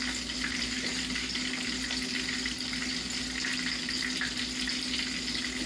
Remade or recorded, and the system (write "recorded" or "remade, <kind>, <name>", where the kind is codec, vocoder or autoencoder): recorded